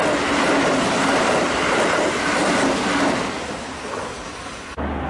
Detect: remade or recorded recorded